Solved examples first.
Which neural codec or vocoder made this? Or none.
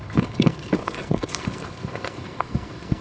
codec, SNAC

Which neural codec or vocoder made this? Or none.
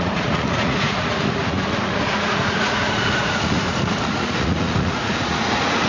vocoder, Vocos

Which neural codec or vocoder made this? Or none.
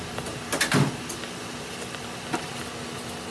none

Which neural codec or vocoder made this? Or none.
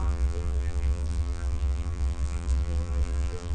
vocoder, BigVGAN v2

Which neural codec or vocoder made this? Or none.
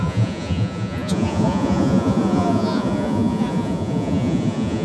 vocoder, Vocos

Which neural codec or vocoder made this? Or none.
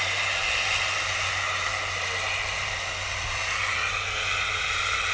none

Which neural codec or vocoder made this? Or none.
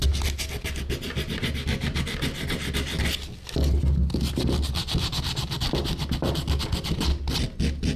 none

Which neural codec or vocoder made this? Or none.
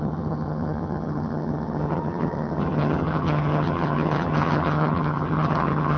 vocoder, HiFi-GAN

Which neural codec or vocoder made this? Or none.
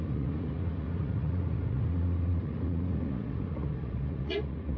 vocoder, Vocos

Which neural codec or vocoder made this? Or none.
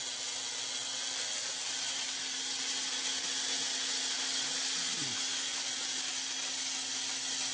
none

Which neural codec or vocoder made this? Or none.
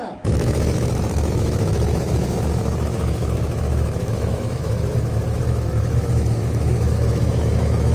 autoencoder, DAC-VAE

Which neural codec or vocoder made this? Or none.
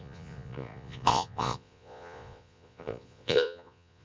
vocoder, Vocos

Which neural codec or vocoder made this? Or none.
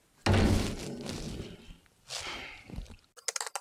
none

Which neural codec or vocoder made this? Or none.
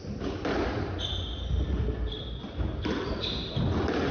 none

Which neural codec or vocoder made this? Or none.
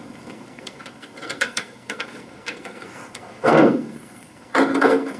codec, SNAC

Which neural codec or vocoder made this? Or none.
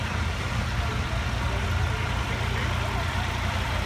vocoder, BigVGAN v2